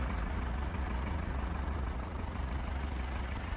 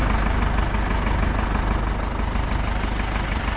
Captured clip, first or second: second